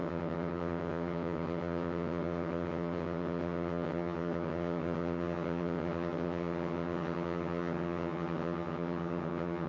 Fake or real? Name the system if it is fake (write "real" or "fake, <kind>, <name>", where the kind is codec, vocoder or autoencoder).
fake, vocoder, HiFi-GAN